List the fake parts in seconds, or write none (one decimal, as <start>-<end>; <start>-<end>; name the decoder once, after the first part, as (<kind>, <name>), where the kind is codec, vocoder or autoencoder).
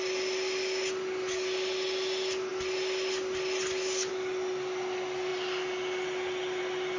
none